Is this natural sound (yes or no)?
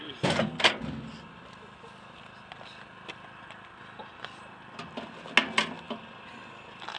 yes